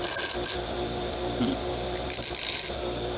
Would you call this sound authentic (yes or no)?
yes